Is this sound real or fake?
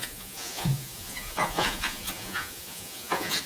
fake